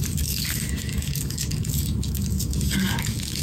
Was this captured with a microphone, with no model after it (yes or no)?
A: no